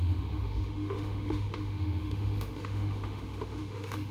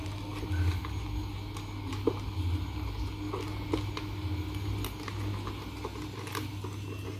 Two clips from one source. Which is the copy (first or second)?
first